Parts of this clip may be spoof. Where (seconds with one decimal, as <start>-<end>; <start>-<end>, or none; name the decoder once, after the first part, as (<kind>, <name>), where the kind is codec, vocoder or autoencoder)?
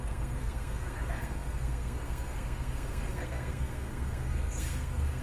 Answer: 0.0-5.2 (codec, SNAC)